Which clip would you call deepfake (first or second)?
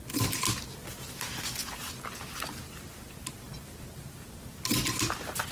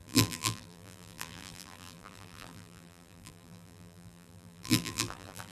second